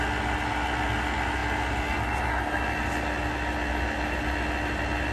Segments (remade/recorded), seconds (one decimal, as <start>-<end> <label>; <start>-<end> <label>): 0.0-5.1 recorded